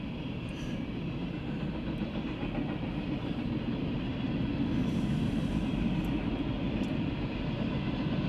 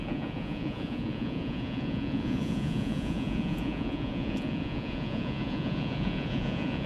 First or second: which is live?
first